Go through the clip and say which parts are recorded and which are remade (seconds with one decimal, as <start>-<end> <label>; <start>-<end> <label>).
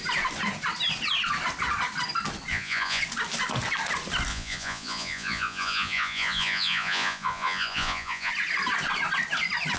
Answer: 0.0-2.5 recorded; 2.5-3.0 remade; 3.0-4.3 recorded; 4.3-8.3 remade; 8.3-9.8 recorded